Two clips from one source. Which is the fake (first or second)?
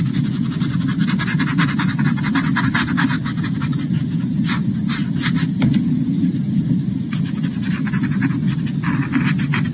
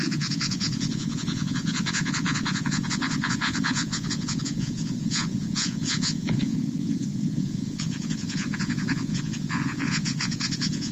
second